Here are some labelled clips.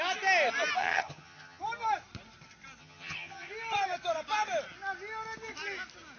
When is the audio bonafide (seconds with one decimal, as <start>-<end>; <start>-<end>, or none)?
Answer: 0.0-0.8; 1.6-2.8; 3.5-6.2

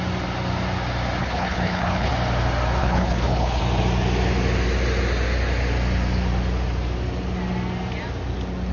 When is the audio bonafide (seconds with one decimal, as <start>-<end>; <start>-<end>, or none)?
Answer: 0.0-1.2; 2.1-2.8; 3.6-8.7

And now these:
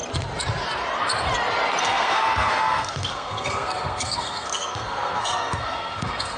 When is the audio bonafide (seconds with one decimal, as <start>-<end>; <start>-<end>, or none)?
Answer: 0.0-1.8

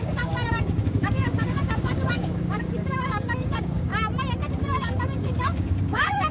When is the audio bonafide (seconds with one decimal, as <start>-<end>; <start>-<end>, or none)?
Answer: 3.9-4.5

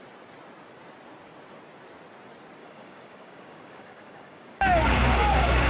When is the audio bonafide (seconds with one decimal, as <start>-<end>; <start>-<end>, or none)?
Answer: 0.0-2.6

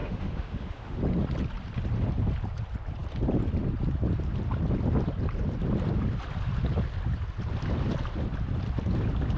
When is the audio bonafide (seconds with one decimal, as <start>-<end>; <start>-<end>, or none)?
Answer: 1.0-9.4

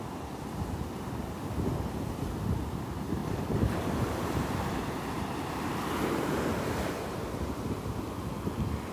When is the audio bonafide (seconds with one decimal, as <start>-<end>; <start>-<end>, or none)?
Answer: 0.0-3.2; 7.6-8.9